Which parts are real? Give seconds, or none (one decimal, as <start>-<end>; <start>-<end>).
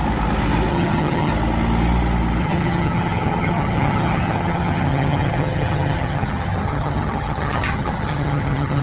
0.0-0.7; 1.3-2.4